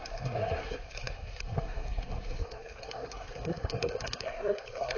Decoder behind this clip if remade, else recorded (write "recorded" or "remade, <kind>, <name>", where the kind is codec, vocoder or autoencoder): remade, codec, SNAC